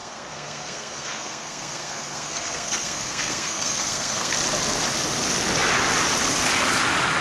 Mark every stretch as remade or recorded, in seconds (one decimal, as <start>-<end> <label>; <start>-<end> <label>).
0.0-4.3 remade; 4.3-7.2 recorded